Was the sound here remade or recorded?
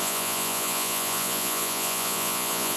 remade